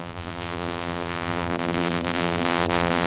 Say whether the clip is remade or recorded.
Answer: remade